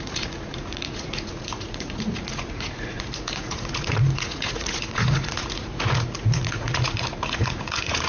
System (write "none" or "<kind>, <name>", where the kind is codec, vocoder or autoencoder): vocoder, Vocos